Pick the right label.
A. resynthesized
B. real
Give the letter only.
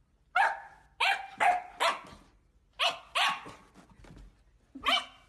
B